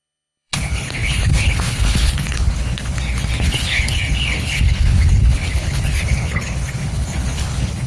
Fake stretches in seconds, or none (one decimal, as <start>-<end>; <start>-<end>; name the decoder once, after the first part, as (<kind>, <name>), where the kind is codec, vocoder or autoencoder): 0.0-7.9 (codec, HILCodec)